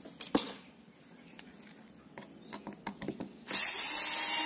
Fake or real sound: real